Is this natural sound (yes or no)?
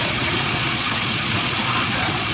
no